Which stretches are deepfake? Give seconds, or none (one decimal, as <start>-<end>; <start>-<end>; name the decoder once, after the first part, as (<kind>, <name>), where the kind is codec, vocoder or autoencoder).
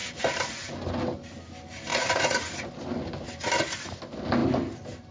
1.9-2.5 (vocoder, Vocos)